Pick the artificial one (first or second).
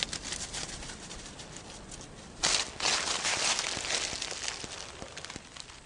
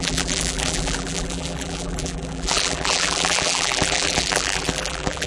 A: second